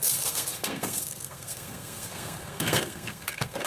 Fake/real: fake